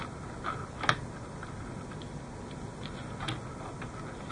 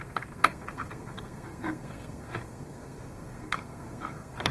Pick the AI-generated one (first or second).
second